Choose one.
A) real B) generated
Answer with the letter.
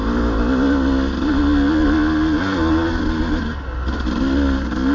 A